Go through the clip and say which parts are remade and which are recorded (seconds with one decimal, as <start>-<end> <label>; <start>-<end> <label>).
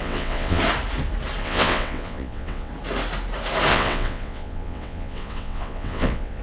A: 0.0-0.6 remade; 0.6-1.4 recorded; 1.4-2.7 remade; 2.7-3.7 recorded; 3.7-6.4 remade